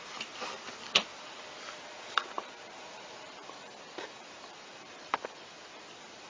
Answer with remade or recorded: remade